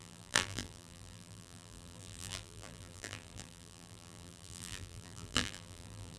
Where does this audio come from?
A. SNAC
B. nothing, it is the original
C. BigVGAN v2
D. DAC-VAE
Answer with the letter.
C